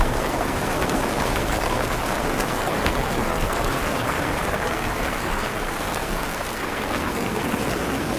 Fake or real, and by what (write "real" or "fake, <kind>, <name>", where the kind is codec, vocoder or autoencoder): fake, codec, SNAC